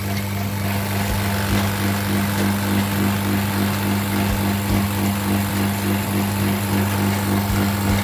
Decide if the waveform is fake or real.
real